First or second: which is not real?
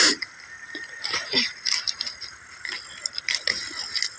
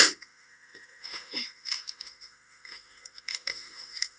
second